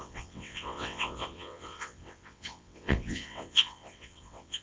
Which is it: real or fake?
fake